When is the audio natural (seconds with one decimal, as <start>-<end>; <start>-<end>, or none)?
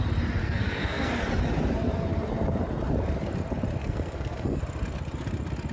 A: 0.0-0.4; 1.2-3.8; 4.6-5.7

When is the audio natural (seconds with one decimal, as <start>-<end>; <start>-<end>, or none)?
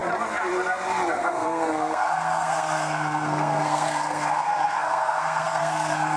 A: 0.0-1.2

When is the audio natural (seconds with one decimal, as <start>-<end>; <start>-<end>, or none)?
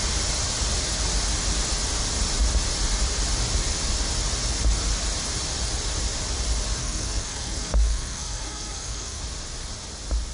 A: 0.0-6.8; 9.2-10.3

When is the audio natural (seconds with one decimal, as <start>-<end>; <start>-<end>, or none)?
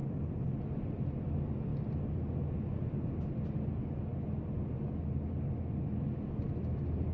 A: 0.0-7.1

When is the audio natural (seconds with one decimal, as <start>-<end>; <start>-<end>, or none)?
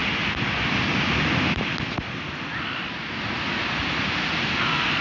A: 0.0-5.0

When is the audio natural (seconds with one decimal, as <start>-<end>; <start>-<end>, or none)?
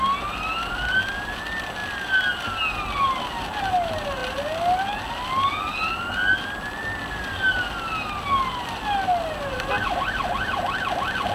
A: 0.0-11.3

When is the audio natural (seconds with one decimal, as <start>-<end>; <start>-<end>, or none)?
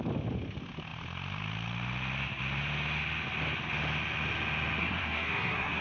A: 0.0-4.8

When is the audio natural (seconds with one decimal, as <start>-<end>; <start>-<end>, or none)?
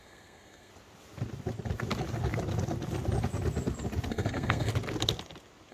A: 0.7-4.1; 4.7-5.7